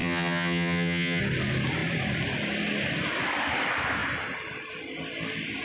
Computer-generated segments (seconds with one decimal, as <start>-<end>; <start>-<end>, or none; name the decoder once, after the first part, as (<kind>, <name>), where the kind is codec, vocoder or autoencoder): 0.0-1.2 (vocoder, HiFi-GAN)